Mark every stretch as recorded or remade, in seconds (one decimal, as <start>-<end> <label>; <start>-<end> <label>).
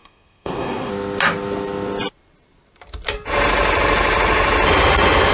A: 0.0-0.9 remade; 0.9-5.3 recorded